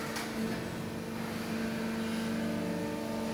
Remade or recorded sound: recorded